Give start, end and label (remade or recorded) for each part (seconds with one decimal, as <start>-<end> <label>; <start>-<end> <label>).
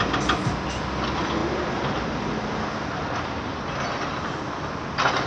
0.0-5.3 recorded